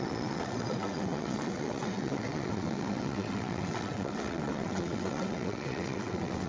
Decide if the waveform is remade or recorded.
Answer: remade